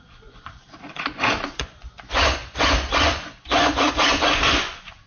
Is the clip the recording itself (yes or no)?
no